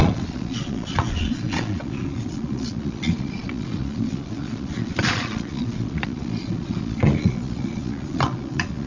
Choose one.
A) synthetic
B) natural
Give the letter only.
A